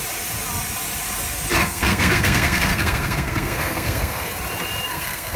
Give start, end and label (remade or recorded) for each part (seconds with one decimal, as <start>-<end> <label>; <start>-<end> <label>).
0.0-1.6 recorded; 1.6-4.3 remade; 4.3-4.9 recorded; 4.9-5.4 remade